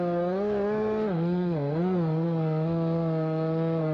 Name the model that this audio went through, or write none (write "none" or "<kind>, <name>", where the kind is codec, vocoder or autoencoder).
codec, SNAC